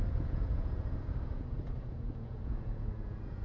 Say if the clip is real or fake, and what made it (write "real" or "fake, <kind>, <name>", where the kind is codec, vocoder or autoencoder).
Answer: fake, vocoder, Vocos